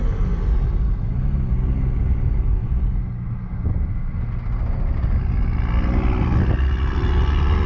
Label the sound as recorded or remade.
recorded